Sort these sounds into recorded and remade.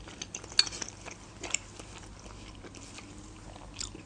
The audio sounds recorded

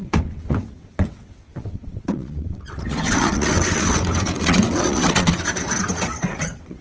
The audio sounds remade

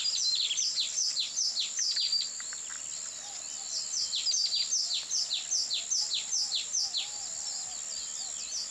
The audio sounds recorded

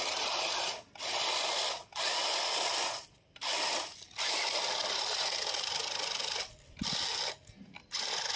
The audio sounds recorded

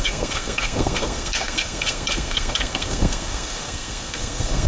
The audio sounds remade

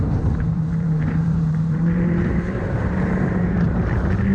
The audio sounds remade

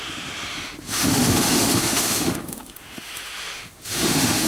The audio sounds remade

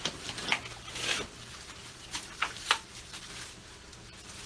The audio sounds recorded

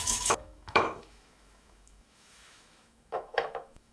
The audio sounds remade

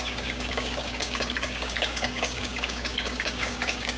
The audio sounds remade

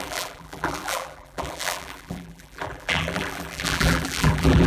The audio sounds remade